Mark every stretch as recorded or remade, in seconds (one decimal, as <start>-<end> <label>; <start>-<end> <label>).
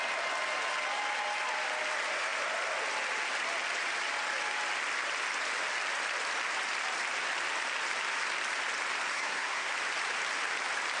0.0-9.1 recorded; 9.1-9.7 remade; 9.7-11.0 recorded